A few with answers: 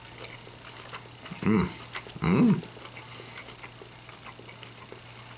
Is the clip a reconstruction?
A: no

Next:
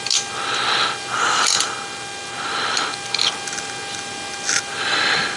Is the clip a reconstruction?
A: no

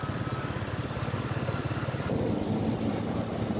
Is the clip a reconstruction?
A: no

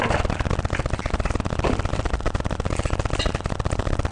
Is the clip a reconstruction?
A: no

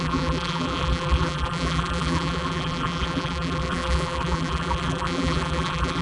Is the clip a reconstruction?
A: yes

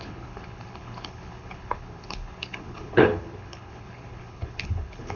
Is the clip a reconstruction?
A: yes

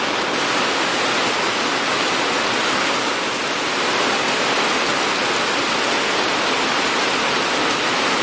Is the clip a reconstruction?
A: no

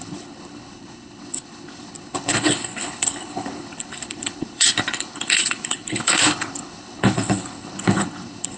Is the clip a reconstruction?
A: yes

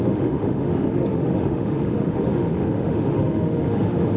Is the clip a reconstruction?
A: yes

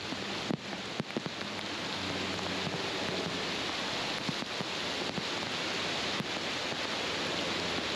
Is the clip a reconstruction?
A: no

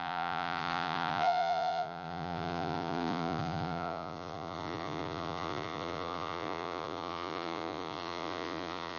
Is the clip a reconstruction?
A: yes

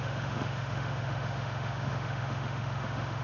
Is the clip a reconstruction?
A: yes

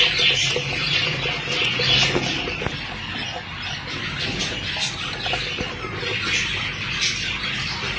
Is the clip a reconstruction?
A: no